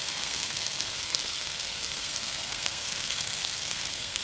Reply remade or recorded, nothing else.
remade